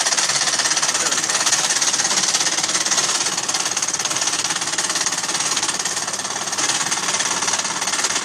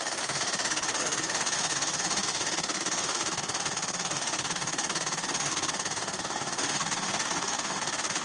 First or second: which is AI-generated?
second